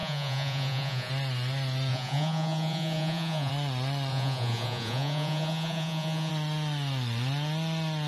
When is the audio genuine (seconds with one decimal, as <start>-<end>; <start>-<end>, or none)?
1.1-1.9; 3.5-4.1; 6.3-8.1